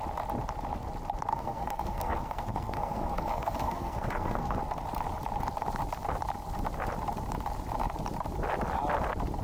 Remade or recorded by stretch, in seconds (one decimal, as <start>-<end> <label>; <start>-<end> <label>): 0.0-1.3 recorded; 1.3-4.6 remade; 4.6-9.4 recorded